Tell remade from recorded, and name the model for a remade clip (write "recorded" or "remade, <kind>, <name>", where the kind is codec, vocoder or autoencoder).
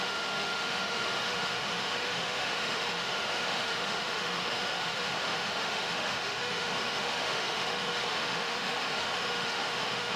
remade, autoencoder, DAC-VAE